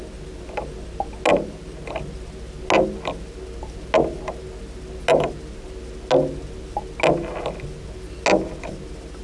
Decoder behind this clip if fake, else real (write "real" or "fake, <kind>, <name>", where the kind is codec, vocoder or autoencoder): real